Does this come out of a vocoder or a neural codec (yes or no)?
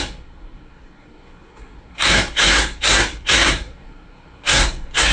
yes